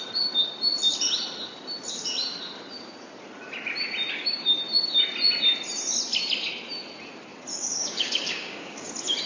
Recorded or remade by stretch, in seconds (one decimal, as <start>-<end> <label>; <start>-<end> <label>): 0.0-4.1 recorded; 4.1-4.6 remade; 4.6-7.5 recorded; 7.5-8.9 remade; 8.9-9.3 recorded